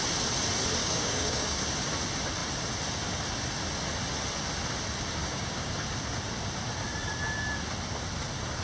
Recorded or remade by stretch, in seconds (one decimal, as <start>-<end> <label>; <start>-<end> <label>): 0.0-0.8 recorded; 0.8-1.6 remade; 1.6-5.2 recorded; 5.2-5.7 remade; 5.7-8.6 recorded